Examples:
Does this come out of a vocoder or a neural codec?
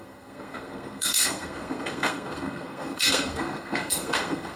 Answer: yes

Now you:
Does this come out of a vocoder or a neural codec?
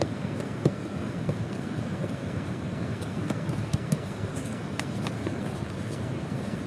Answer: yes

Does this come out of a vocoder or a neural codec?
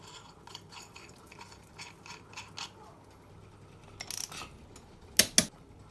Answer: no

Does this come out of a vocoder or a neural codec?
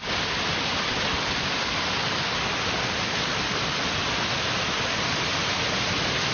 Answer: no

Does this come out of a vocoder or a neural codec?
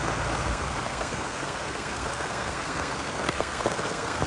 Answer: yes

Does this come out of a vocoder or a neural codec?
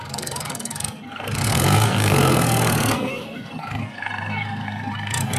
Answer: yes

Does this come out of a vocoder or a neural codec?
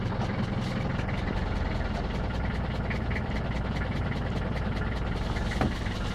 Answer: no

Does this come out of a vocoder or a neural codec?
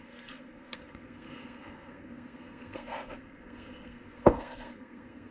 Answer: yes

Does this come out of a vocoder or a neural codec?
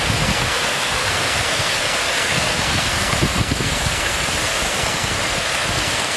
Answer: yes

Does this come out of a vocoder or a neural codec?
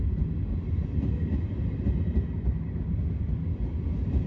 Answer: no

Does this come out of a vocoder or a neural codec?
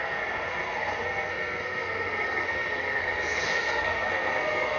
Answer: yes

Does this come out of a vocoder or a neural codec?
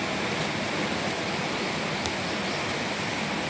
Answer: no